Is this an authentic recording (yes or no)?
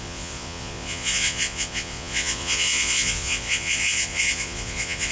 no